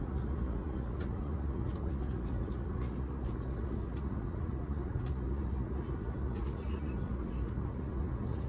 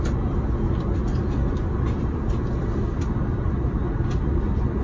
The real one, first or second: second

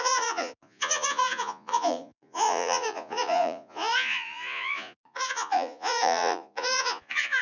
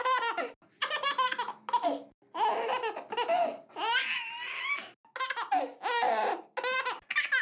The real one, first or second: second